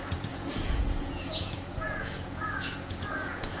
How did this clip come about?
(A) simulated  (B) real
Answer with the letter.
A